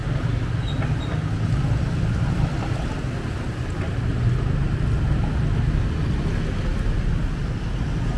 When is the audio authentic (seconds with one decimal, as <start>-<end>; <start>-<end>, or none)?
0.0-8.2